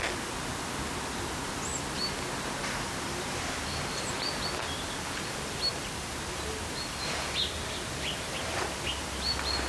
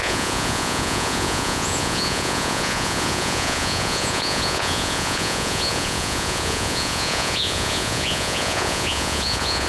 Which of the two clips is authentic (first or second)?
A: first